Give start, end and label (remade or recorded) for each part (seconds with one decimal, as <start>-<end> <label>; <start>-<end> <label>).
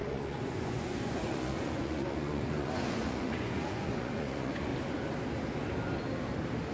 0.0-4.7 remade; 4.7-6.7 recorded